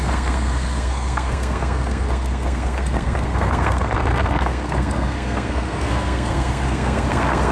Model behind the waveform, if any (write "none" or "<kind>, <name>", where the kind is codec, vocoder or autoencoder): codec, SNAC